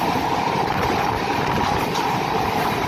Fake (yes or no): yes